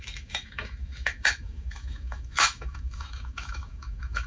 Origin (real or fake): fake